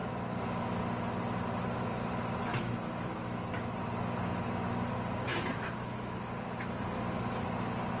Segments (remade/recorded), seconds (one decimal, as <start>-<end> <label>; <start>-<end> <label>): 0.0-2.5 recorded; 2.5-3.5 remade; 3.5-5.3 recorded; 5.3-6.3 remade; 6.3-8.0 recorded